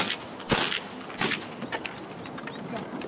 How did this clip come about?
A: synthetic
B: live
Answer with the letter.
B